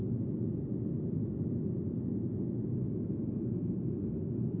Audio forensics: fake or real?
real